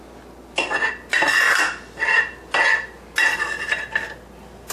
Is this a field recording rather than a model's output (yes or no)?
yes